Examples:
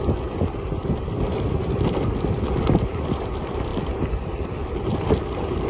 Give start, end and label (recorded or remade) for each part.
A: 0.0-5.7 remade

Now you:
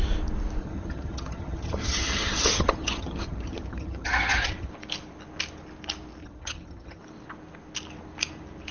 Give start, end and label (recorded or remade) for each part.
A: 0.0-0.6 recorded; 0.6-4.7 remade; 4.7-6.2 recorded; 6.2-7.0 remade; 7.0-8.7 recorded